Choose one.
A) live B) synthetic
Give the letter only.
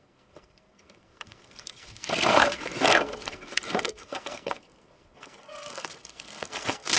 B